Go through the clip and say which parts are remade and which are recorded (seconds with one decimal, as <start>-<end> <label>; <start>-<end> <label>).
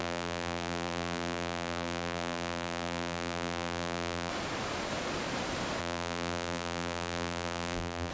0.0-4.3 remade; 4.3-5.8 recorded; 5.8-8.1 remade